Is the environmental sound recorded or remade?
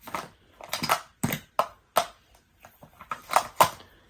recorded